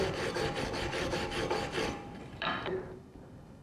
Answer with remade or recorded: remade